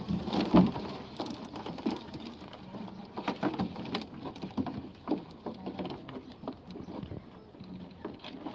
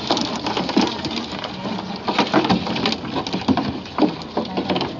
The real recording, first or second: second